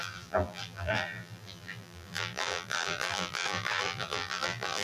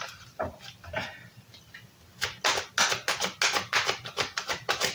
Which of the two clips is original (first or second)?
second